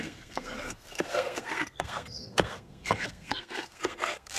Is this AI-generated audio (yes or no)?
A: yes